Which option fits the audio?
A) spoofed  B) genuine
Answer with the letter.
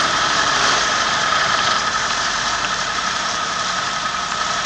A